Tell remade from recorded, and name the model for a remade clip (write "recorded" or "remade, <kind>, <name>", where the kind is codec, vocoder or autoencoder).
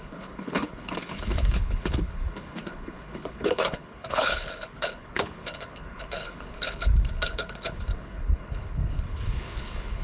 remade, codec, HILCodec